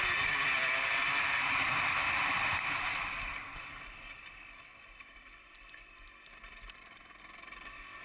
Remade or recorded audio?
remade